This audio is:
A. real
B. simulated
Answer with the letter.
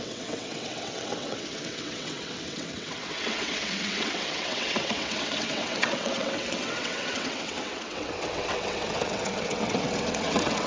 B